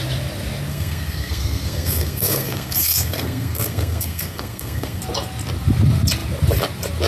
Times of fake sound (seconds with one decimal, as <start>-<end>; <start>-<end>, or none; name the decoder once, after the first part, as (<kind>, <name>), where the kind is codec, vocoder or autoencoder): 0.7-5.0 (codec, SNAC)